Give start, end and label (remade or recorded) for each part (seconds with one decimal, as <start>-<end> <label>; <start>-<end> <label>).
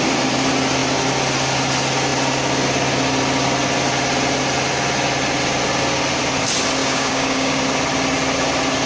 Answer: 0.0-6.8 recorded; 6.8-7.6 remade; 7.6-8.9 recorded